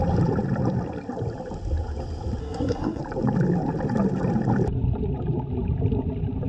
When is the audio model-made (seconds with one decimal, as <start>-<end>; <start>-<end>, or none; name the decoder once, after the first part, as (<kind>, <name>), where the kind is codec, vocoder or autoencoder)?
2.4-3.0 (codec, SNAC)